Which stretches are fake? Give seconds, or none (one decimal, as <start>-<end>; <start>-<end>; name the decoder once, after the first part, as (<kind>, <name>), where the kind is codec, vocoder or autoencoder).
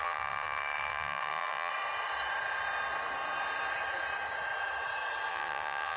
0.0-1.7 (vocoder, WaveNeXt); 5.3-6.0